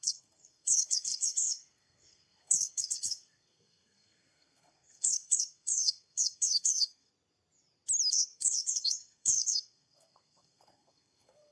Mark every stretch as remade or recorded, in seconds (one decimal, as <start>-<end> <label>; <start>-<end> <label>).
0.0-7.1 remade; 7.1-8.1 recorded; 8.1-11.5 remade